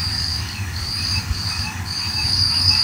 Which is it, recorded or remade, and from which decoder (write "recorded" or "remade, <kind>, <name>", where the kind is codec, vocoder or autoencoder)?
remade, codec, DAC